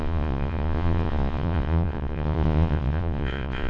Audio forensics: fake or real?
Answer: fake